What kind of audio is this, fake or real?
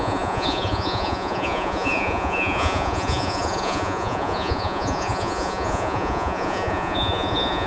fake